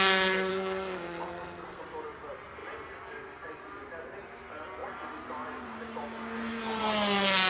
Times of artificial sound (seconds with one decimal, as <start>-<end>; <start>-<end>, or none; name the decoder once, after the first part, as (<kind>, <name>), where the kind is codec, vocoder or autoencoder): 0.5-1.8 (codec, SNAC)